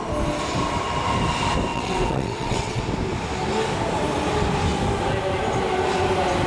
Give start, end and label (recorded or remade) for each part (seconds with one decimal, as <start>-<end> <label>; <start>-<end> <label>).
0.0-1.7 recorded; 1.7-2.8 remade; 2.8-6.5 recorded